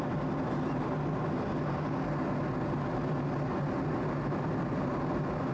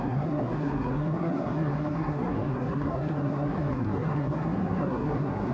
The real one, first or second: first